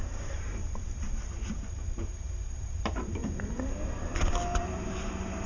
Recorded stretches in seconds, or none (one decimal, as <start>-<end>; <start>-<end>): 3.2-4.6